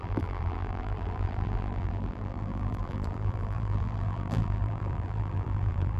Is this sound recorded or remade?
remade